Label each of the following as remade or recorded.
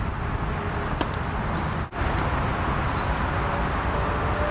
recorded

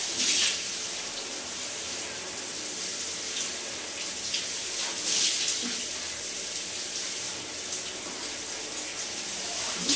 recorded